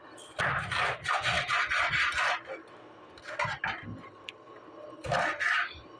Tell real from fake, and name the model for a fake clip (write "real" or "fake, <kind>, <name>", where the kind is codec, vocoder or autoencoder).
real